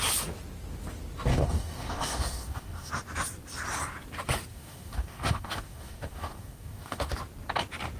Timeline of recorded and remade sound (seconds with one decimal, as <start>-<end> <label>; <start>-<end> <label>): 0.0-1.3 recorded; 1.3-2.9 remade; 2.9-4.5 recorded; 4.5-7.1 remade; 7.1-8.0 recorded